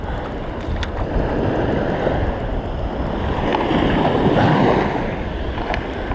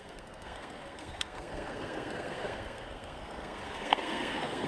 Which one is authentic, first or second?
first